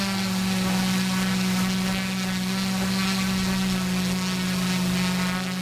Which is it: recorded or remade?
recorded